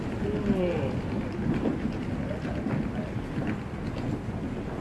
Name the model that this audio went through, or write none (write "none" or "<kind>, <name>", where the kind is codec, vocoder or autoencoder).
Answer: none